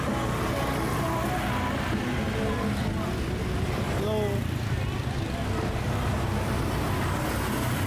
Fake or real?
real